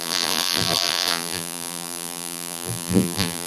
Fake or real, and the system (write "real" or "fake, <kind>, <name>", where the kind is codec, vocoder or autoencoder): fake, vocoder, BigVGAN v2